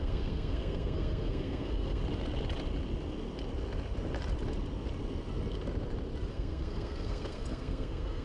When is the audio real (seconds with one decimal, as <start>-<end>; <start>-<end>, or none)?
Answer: 2.0-6.3